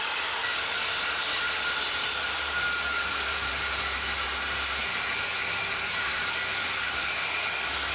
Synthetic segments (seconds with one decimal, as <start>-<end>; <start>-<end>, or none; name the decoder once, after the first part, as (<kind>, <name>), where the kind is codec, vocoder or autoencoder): 0.4-0.9 (codec, DAC); 2.0-3.5; 4.9-7.5